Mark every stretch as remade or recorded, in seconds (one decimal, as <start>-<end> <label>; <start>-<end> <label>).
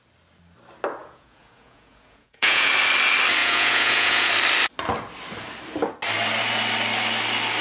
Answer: 0.0-1.0 recorded; 1.0-2.7 remade; 2.7-3.4 recorded; 3.4-4.3 remade; 4.3-7.6 recorded